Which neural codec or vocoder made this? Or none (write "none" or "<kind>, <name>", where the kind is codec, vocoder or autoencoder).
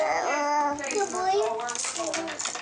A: none